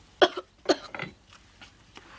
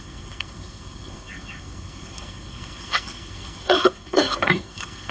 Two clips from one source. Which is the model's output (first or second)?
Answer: second